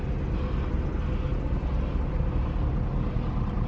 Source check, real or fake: real